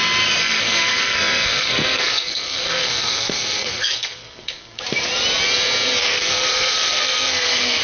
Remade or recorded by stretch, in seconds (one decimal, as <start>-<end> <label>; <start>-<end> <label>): 0.0-0.4 recorded; 0.4-4.8 remade; 4.8-6.0 recorded; 6.0-7.8 remade